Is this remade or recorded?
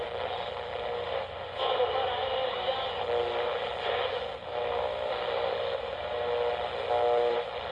recorded